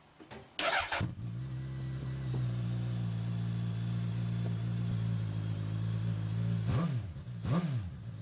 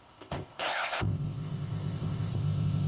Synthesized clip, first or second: second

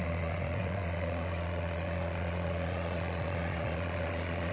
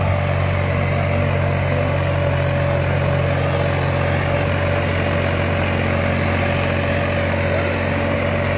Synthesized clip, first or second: first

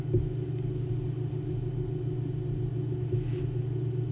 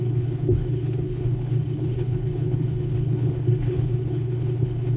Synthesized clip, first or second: second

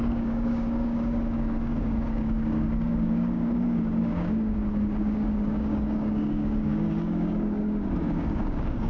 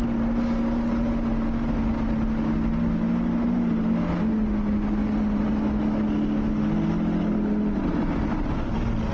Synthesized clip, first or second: first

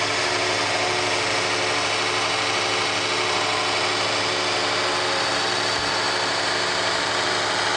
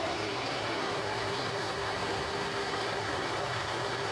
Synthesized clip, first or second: second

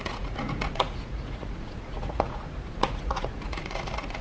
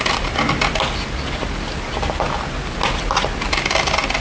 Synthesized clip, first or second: first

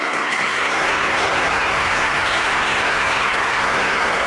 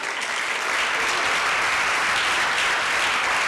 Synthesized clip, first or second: first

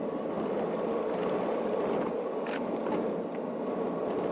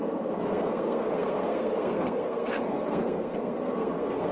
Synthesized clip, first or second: second